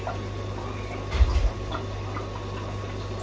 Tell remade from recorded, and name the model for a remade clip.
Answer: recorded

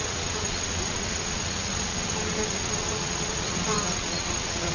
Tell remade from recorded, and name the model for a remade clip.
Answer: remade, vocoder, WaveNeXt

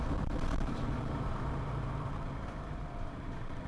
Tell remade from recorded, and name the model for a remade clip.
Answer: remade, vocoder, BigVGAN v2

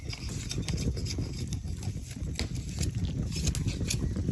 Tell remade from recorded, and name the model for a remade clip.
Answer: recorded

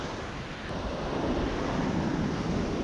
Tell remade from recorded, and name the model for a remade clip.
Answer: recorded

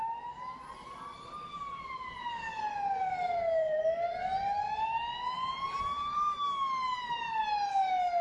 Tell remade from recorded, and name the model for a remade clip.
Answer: recorded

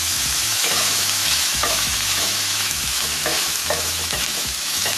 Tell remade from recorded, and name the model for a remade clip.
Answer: remade, autoencoder, DAC-VAE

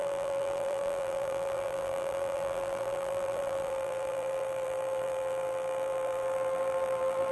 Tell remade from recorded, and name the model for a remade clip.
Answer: remade, vocoder, BigVGAN v2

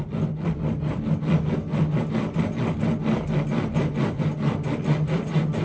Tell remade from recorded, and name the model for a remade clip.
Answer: recorded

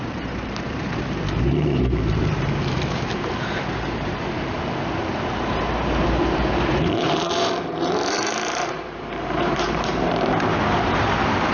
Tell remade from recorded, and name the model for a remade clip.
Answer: remade, vocoder, BigVGAN v2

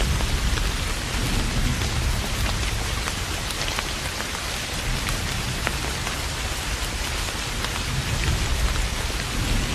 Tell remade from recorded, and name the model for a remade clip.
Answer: recorded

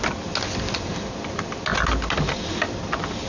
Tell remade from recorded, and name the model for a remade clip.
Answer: recorded